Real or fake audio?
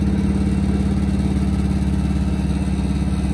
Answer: real